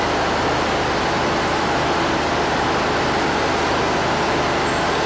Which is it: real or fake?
real